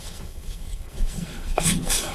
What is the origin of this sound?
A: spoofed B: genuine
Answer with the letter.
A